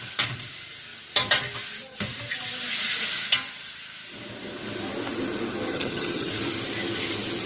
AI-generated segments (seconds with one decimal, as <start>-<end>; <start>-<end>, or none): 5.7-6.3